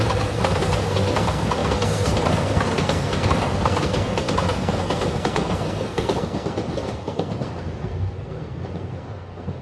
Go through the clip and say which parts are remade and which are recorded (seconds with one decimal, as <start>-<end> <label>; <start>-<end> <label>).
0.0-9.6 remade